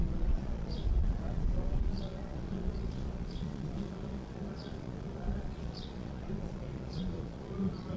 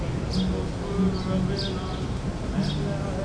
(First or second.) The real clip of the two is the second